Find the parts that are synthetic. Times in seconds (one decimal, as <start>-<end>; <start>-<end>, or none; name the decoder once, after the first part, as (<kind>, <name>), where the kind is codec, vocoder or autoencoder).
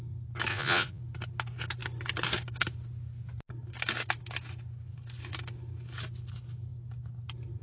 0.5-1.0 (vocoder, Vocos)